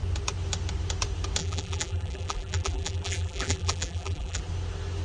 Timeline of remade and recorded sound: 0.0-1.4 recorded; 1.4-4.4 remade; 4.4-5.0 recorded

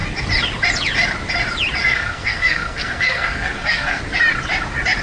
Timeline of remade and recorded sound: 0.0-1.8 recorded; 1.8-4.0 remade; 4.0-5.0 recorded

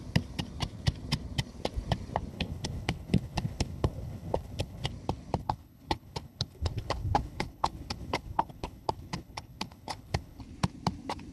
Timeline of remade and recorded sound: 0.0-2.3 recorded; 2.3-4.9 remade; 4.9-5.4 recorded; 5.4-10.4 remade; 10.4-11.3 recorded

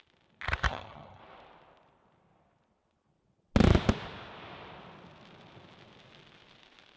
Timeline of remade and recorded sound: 0.0-0.7 recorded; 0.7-1.2 remade; 1.2-7.0 recorded

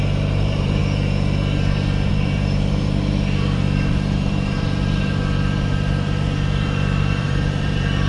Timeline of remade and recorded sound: 0.0-0.8 remade; 0.8-2.1 recorded; 2.1-8.1 remade

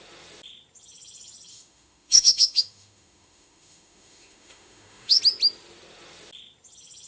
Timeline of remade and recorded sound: 0.0-1.5 recorded; 1.5-5.2 remade; 5.2-7.1 recorded

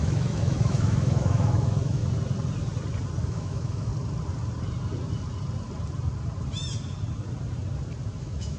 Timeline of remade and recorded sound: 0.0-2.0 remade; 2.0-3.2 recorded; 3.2-3.9 remade; 3.9-8.2 recorded; 8.2-8.6 remade